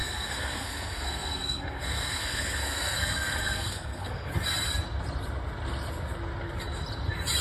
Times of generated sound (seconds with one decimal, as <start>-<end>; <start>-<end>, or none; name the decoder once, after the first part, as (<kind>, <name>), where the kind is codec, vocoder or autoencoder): 0.0-4.3 (codec, SNAC)